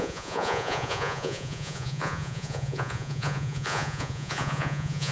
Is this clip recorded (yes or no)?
no